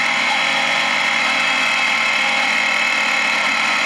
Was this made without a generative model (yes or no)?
no